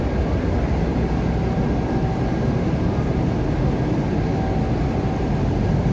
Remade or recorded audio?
recorded